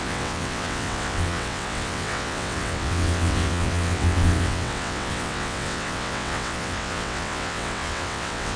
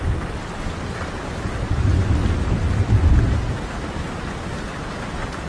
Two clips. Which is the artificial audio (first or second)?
first